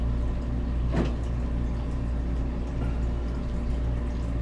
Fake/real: real